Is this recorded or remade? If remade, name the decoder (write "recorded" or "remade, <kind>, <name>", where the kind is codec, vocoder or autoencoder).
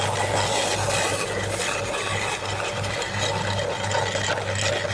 recorded